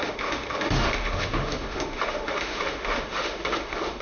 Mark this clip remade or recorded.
remade